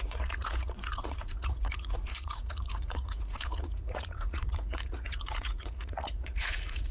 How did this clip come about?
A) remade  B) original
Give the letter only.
A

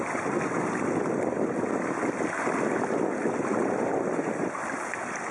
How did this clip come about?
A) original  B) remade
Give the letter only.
A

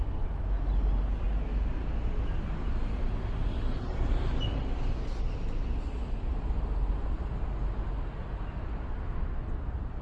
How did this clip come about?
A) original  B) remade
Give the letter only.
A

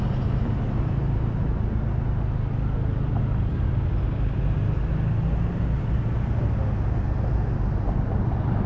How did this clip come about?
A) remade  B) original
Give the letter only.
B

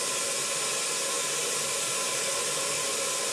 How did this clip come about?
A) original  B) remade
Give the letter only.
A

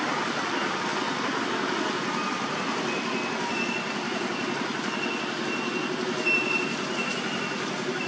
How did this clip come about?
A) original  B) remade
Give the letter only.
A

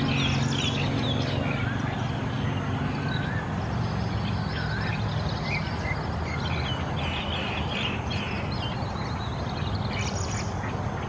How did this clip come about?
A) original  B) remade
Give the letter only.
A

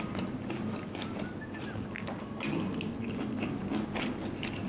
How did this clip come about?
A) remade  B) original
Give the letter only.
B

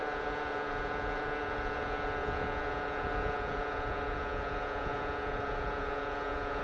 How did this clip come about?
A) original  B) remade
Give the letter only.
B